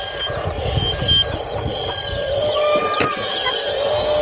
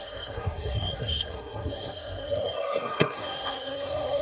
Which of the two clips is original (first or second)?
first